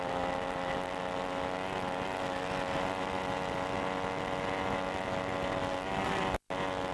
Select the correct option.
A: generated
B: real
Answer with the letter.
B